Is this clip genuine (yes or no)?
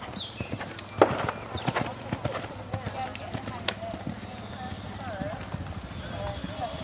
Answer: yes